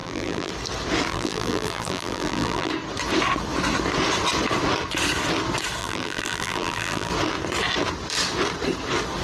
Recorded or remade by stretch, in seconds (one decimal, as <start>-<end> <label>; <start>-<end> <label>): 0.0-0.5 remade; 0.5-1.1 recorded; 1.1-2.7 remade; 2.7-5.8 recorded; 5.8-7.1 remade; 7.1-9.2 recorded